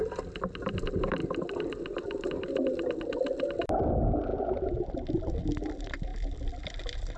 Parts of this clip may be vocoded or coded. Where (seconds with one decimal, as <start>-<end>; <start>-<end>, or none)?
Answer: none